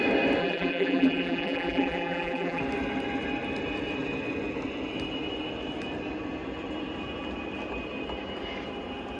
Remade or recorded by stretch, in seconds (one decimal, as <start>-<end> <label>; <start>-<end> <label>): 0.0-0.4 recorded; 0.4-2.6 remade; 2.6-9.2 recorded